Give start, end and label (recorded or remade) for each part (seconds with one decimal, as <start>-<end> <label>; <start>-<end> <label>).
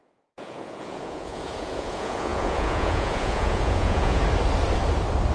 0.0-4.2 remade; 4.2-5.3 recorded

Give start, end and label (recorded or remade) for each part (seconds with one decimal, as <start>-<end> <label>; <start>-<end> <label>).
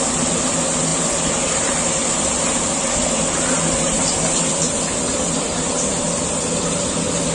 0.0-7.3 recorded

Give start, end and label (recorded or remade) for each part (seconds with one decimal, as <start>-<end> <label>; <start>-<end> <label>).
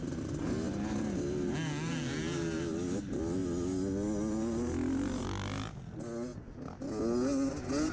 0.0-7.9 recorded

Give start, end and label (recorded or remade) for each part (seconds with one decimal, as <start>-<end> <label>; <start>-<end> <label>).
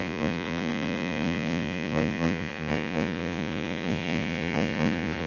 0.0-5.3 remade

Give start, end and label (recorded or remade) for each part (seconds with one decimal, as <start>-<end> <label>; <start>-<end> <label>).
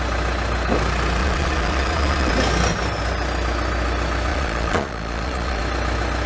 0.0-1.2 recorded; 1.2-2.3 remade; 2.3-4.3 recorded; 4.3-5.6 remade; 5.6-6.3 recorded